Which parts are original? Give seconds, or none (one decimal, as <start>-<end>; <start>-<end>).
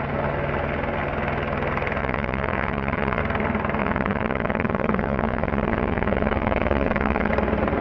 0.0-2.0; 3.2-3.8; 7.3-7.8